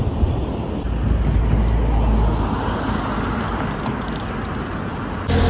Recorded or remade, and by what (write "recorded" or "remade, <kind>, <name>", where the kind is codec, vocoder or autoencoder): recorded